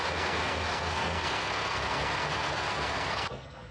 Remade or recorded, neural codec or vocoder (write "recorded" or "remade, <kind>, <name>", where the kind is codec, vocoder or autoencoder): remade, codec, SNAC